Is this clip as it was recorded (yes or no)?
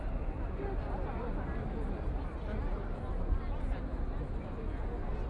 yes